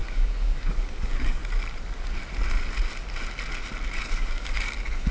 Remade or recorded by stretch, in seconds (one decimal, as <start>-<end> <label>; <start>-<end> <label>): 0.0-1.4 remade; 1.4-4.0 recorded; 4.0-5.1 remade